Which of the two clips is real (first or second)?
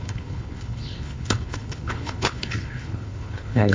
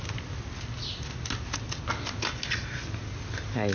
second